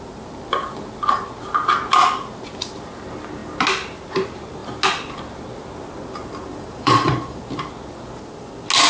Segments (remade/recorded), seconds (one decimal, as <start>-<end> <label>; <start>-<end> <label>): 0.0-6.5 recorded; 6.5-7.4 remade; 7.4-8.9 recorded